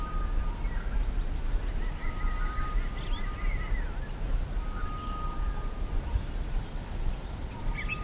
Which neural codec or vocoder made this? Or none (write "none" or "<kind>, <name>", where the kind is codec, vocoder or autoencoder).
none